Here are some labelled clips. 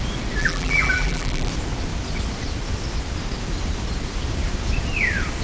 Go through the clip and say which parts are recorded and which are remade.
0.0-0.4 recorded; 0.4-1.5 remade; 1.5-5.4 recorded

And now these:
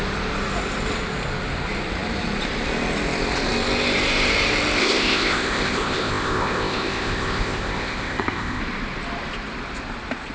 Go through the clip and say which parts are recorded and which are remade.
0.0-4.8 recorded; 4.8-8.6 remade; 8.6-10.3 recorded

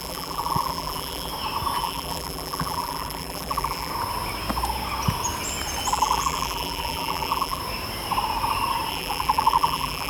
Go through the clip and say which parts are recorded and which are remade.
0.0-1.3 remade; 1.3-1.8 recorded; 1.8-3.9 remade; 3.9-5.9 recorded; 5.9-7.6 remade; 7.6-8.9 recorded; 8.9-10.1 remade